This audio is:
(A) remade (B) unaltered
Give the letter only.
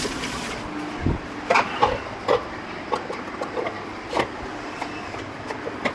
B